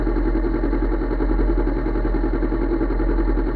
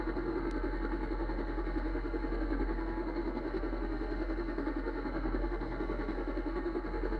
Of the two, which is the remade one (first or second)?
second